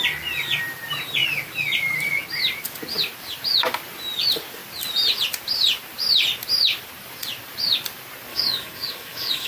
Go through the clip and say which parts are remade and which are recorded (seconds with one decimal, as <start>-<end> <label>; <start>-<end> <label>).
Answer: 0.0-8.3 recorded; 8.3-9.5 remade